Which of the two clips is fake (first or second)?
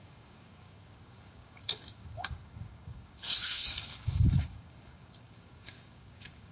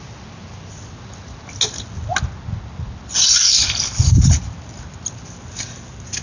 first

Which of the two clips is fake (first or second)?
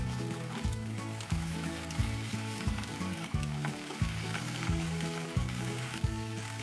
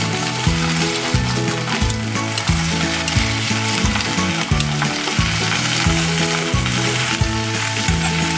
first